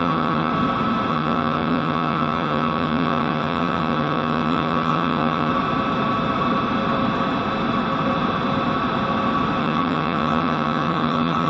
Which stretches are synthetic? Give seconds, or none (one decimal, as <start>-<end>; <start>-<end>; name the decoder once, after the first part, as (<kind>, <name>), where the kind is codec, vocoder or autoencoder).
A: 0.0-0.5 (vocoder, HiFi-GAN); 1.1-5.5; 9.6-11.5